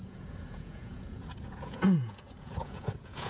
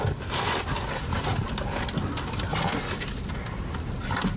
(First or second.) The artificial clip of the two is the first